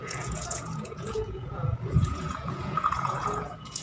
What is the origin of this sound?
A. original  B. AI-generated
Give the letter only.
B